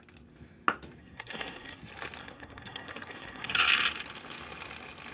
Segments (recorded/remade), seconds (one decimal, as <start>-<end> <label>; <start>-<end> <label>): 0.0-1.0 recorded; 1.0-1.8 remade; 1.8-2.2 recorded; 2.2-3.7 remade; 3.7-5.1 recorded

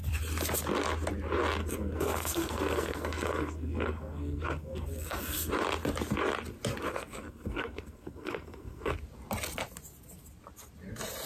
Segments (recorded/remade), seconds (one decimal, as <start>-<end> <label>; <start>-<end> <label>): 0.0-1.6 recorded; 1.6-5.5 remade; 5.5-6.9 recorded; 6.9-8.9 remade; 8.9-11.3 recorded

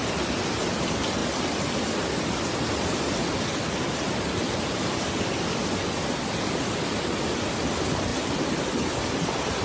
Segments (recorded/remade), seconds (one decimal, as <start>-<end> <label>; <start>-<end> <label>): 0.0-9.6 recorded

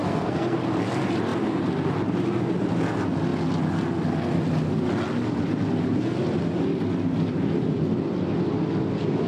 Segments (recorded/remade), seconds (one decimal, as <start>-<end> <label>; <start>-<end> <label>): 0.0-0.6 remade; 0.6-9.3 recorded

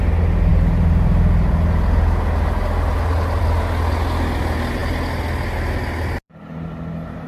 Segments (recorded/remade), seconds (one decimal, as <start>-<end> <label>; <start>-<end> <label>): 0.0-7.3 recorded

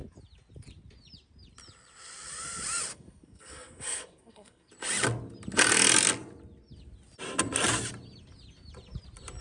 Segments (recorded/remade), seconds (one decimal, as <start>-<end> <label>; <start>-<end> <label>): 0.0-2.9 recorded; 2.9-4.7 remade; 4.7-9.4 recorded

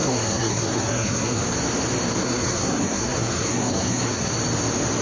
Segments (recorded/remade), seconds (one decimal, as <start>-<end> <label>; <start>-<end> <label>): 0.0-1.4 remade; 1.4-2.2 recorded; 2.2-4.3 remade; 4.3-5.0 recorded